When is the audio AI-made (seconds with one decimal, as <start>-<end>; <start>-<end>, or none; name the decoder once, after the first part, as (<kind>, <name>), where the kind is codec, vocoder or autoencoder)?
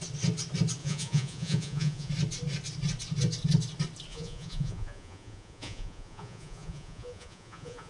0.8-2.1 (vocoder, Vocos); 4.1-7.9